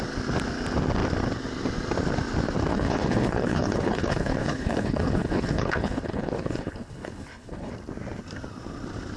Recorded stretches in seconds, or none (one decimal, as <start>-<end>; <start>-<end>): 0.0-2.7; 7.7-9.2